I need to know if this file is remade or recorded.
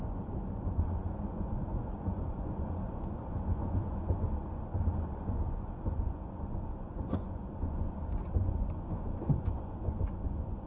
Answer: remade